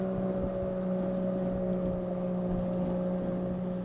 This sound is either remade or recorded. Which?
recorded